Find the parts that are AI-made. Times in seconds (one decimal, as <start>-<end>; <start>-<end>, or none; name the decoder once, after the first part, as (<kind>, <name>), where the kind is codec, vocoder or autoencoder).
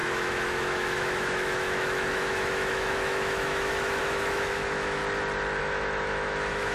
0.0-5.0 (autoencoder, DAC-VAE); 5.6-6.7